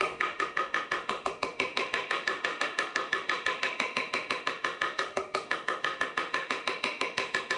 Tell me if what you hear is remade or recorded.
remade